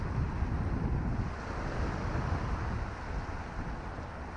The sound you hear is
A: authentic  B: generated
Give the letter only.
A